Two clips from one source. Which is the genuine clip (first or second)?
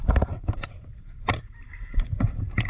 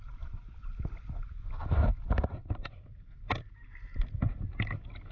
second